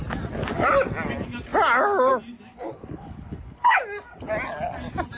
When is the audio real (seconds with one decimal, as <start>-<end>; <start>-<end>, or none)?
0.0-2.5; 3.8-5.2